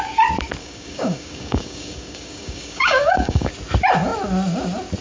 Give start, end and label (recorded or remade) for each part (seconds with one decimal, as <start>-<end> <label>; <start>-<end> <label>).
0.0-0.6 recorded; 0.6-3.5 remade; 3.5-5.0 recorded